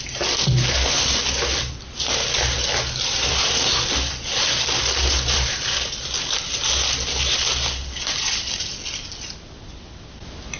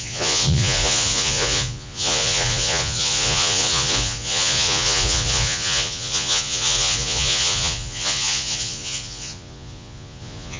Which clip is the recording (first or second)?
first